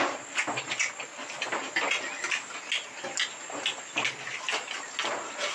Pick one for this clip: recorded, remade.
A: recorded